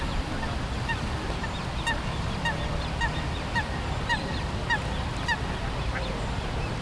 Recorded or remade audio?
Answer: recorded